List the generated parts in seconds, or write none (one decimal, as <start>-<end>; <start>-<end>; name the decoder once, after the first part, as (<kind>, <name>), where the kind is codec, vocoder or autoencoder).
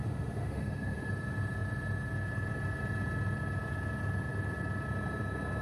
0.0-1.1 (autoencoder, DAC-VAE)